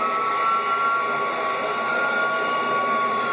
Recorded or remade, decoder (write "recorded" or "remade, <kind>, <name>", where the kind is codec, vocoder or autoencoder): recorded